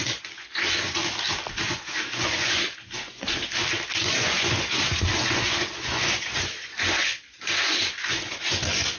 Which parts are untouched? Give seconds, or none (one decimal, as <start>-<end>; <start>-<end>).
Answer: 1.0-1.6; 3.4-4.0